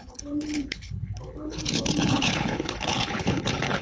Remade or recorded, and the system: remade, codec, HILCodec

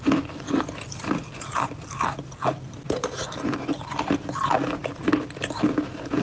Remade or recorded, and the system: recorded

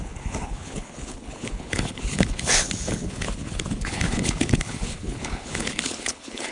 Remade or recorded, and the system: remade, codec, HILCodec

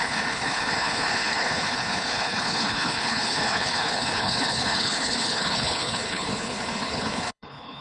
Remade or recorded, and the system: remade, codec, HILCodec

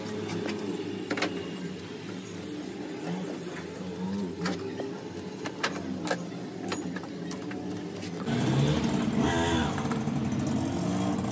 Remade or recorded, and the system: recorded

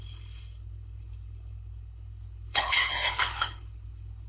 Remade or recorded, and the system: remade, codec, HILCodec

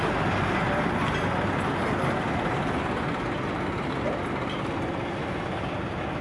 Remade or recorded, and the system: recorded